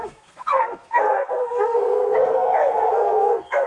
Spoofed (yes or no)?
yes